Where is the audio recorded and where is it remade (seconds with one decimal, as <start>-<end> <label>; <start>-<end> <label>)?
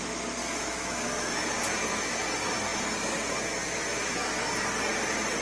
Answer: 0.0-0.4 recorded; 0.4-1.4 remade; 1.4-5.4 recorded